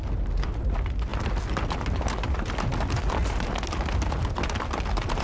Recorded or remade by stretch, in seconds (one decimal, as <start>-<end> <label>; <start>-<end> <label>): 0.0-5.2 recorded

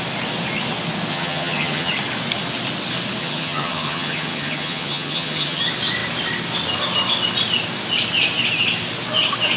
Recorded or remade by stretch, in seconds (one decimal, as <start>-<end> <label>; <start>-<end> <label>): 0.0-1.1 recorded; 1.1-1.9 remade; 1.9-3.2 recorded; 3.2-5.6 remade; 5.6-9.6 recorded

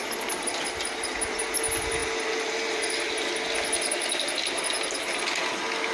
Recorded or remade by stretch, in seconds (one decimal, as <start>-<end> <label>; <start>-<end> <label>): 0.0-5.9 recorded

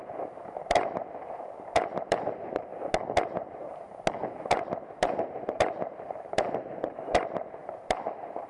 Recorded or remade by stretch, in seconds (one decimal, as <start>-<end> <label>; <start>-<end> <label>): 0.0-2.7 remade; 2.7-3.2 recorded; 3.2-3.7 remade; 3.7-4.5 recorded; 4.5-8.5 remade